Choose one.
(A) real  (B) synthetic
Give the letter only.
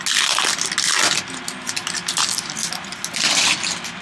A